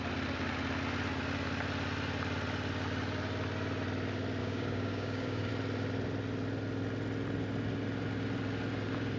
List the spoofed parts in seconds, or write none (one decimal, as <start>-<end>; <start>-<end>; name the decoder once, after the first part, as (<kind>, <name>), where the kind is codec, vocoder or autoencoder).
4.4-5.5 (codec, DAC)